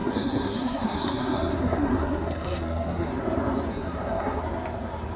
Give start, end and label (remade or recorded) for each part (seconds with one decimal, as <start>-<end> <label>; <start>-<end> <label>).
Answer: 0.0-3.1 remade; 3.1-3.7 recorded; 3.7-4.4 remade; 4.4-5.2 recorded